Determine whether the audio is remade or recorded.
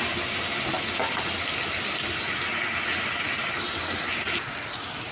recorded